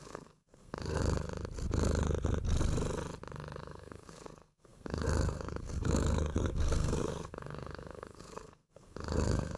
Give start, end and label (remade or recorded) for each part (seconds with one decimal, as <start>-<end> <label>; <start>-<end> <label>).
0.0-1.0 remade; 1.0-3.6 recorded; 3.6-9.6 remade